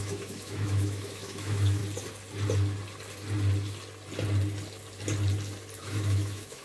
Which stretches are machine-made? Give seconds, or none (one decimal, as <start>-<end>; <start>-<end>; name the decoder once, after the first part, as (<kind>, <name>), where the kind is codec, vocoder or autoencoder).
0.0-1.8 (autoencoder, DAC-VAE); 5.8-6.6